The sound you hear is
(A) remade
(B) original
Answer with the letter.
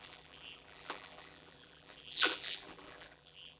A